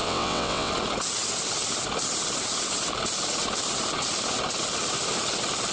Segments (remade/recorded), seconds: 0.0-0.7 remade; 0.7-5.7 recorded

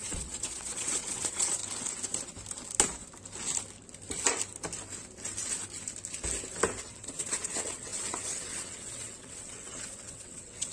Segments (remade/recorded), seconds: 0.0-1.6 remade; 1.6-6.8 recorded; 6.8-10.7 remade

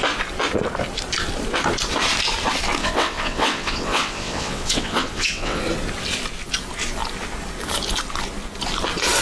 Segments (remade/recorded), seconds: 0.0-2.8 recorded; 2.8-5.6 remade; 5.6-9.2 recorded

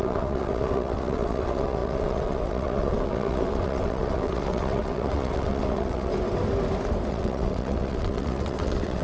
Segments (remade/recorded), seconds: 0.0-6.1 remade; 6.1-7.1 recorded; 7.1-9.0 remade